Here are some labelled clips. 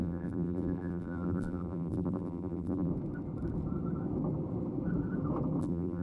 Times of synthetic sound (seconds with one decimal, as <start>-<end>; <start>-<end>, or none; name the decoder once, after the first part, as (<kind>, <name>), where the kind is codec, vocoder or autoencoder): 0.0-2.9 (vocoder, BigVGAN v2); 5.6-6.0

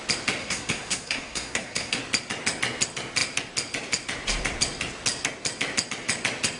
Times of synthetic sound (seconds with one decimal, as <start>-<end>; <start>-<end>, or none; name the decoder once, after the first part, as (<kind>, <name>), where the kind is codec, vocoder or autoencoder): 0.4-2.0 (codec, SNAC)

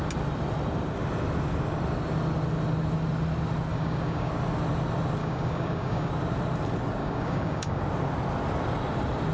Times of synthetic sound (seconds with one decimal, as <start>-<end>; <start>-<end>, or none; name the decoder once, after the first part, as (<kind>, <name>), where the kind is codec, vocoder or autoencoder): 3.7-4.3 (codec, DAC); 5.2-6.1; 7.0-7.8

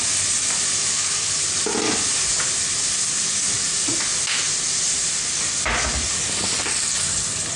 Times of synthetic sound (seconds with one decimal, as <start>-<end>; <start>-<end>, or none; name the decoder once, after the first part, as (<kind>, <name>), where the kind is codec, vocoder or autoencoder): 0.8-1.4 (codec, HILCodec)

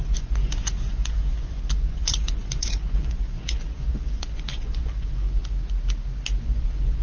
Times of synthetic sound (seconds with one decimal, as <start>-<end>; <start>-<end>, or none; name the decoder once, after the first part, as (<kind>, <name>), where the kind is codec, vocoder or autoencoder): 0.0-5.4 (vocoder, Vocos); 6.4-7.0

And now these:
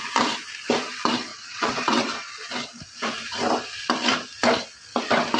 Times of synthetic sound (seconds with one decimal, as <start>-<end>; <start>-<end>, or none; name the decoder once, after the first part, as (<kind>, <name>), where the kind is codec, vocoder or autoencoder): 1.3-2.3 (vocoder, WaveNeXt)

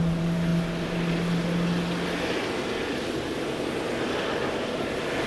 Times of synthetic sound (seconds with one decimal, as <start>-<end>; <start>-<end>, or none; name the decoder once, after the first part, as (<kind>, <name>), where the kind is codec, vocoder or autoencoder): none

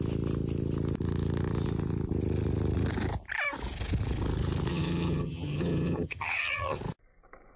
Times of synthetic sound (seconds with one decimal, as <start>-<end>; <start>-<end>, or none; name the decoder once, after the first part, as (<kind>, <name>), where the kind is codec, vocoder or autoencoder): 4.7-6.8 (vocoder, HiFi-GAN)